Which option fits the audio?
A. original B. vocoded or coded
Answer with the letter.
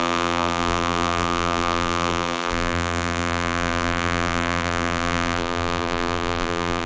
B